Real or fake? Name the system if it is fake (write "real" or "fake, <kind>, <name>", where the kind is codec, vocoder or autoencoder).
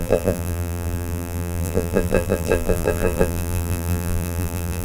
fake, vocoder, BigVGAN v2